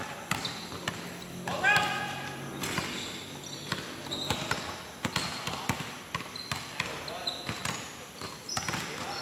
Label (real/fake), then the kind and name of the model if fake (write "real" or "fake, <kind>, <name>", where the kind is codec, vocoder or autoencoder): real